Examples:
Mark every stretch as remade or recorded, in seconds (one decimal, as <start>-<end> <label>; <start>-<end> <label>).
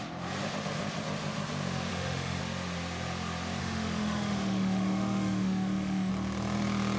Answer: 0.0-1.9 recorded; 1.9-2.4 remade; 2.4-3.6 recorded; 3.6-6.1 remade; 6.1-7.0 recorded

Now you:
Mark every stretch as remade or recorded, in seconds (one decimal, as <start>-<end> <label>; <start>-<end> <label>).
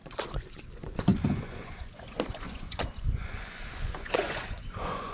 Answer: 0.0-5.1 remade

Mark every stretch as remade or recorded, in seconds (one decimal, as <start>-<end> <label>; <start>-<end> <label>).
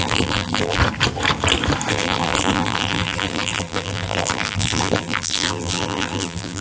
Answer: 0.0-0.8 remade; 0.8-1.9 recorded; 1.9-6.6 remade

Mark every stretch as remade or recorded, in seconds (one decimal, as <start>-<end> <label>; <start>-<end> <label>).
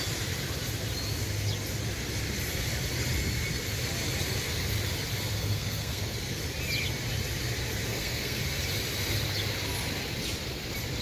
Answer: 0.0-5.4 recorded; 5.4-6.4 remade; 6.4-7.9 recorded; 7.9-8.4 remade; 8.4-11.0 recorded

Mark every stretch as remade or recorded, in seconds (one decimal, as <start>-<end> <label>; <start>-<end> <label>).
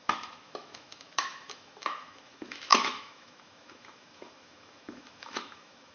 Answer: 0.0-5.9 remade